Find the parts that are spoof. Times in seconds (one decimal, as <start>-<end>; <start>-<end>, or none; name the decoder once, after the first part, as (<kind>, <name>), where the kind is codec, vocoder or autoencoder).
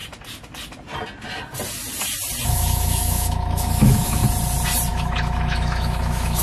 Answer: 2.5-4.2 (autoencoder, DAC-VAE); 4.9-6.4